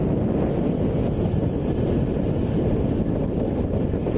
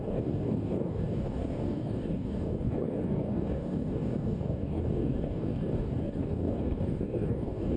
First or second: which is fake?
second